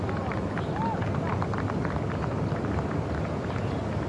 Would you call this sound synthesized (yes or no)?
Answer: no